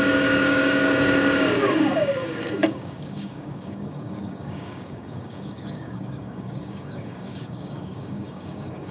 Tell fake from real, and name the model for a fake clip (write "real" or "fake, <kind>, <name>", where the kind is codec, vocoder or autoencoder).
fake, codec, DAC